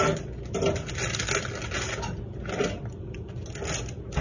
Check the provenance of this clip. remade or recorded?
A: recorded